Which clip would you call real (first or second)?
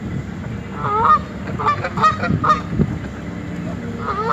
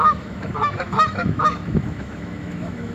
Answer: first